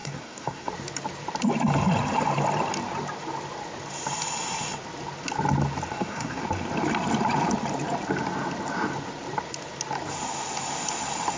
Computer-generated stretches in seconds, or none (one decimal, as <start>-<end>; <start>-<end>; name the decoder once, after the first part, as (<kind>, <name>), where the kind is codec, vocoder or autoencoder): 0.0-0.7 (codec, SNAC); 5.9-6.4